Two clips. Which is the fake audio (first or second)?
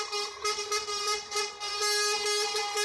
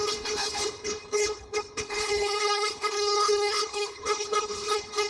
second